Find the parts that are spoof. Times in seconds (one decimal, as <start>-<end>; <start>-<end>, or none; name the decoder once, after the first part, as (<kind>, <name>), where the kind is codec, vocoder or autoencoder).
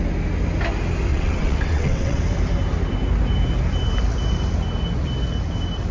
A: 1.1-2.2 (vocoder, WaveNeXt)